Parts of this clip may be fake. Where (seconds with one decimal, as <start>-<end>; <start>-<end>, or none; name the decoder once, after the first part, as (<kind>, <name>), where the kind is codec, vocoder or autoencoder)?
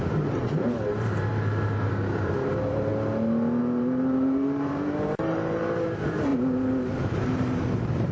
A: 0.0-1.3 (vocoder, BigVGAN v2); 1.9-2.9; 3.6-6.3; 6.9-8.1